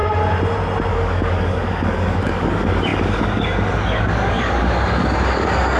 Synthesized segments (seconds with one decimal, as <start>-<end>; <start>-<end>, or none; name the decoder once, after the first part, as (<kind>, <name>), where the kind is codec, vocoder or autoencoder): 0.9-5.8 (codec, DAC)